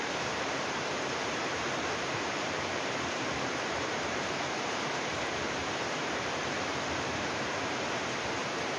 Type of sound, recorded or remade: remade